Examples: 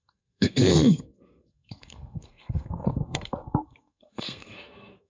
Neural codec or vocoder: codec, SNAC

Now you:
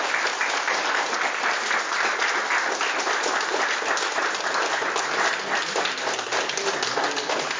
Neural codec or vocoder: none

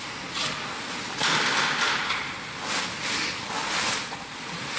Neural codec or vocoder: none